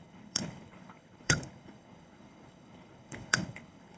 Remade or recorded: remade